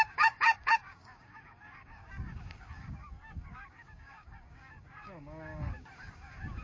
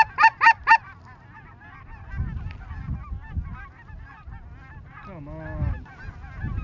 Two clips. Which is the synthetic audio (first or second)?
first